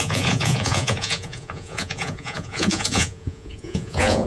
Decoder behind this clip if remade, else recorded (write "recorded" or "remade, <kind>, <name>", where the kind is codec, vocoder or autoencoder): remade, vocoder, Vocos